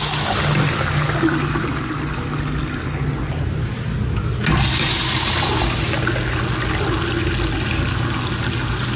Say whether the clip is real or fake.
real